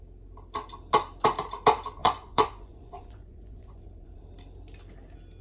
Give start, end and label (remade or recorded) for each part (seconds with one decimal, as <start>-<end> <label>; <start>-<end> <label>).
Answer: 0.0-2.0 recorded; 2.0-4.2 remade; 4.2-5.4 recorded

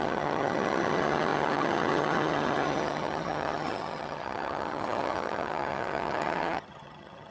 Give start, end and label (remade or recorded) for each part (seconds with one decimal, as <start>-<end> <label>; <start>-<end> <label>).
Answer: 0.0-7.3 remade

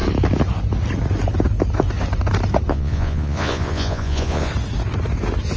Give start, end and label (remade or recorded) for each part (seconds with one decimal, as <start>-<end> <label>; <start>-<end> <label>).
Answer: 0.0-2.7 recorded; 2.7-4.5 remade; 4.5-5.6 recorded

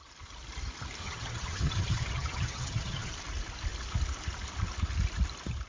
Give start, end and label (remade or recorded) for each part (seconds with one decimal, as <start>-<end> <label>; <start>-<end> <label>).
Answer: 0.0-1.0 recorded; 1.0-3.1 remade; 3.1-5.7 recorded

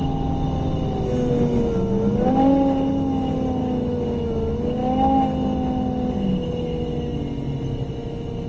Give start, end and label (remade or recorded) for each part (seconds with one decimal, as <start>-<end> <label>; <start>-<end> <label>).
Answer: 0.0-3.6 recorded; 3.6-4.3 remade; 4.3-8.5 recorded

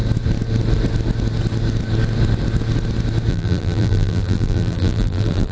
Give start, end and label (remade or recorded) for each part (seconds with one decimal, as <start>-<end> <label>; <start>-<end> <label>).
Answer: 0.0-3.3 recorded; 3.3-5.5 remade